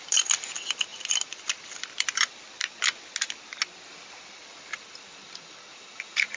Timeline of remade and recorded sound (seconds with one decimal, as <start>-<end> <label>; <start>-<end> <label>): 0.0-5.7 recorded; 5.7-6.4 remade